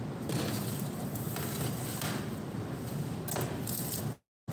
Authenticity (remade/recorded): recorded